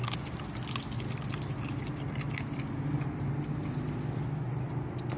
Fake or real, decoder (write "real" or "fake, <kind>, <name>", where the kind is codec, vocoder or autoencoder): real